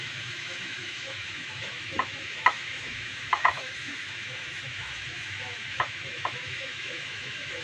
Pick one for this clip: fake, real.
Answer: fake